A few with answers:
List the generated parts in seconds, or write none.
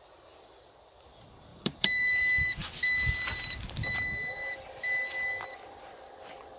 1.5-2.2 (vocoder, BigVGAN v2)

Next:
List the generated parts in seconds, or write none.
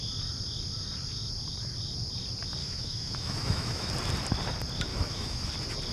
2.6-3.9 (autoencoder, DAC-VAE); 4.9-5.5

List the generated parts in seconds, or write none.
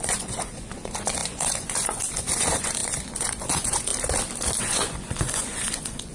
0.0-3.9 (vocoder, Vocos); 4.6-6.1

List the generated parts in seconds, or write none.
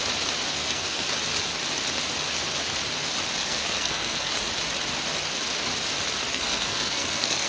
0.5-1.1 (codec, SNAC); 3.4-4.3; 6.3-7.5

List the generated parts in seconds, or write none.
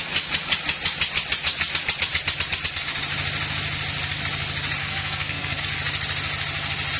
4.8-5.6 (codec, SNAC)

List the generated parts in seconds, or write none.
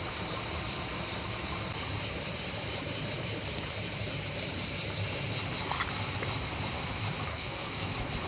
7.3-7.9 (codec, SNAC)